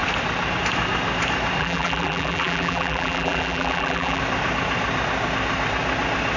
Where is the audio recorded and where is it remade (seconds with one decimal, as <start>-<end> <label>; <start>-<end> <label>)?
0.0-1.6 recorded; 1.6-4.2 remade; 4.2-6.4 recorded